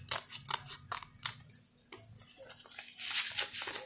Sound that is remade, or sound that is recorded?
recorded